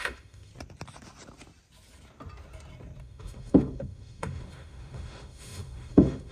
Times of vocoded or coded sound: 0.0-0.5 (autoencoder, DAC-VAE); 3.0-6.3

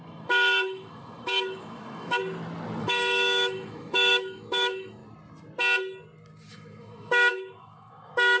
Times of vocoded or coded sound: 0.0-2.2 (autoencoder, DAC-VAE); 2.8-5.0; 6.5-8.4